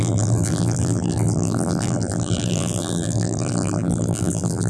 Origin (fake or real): fake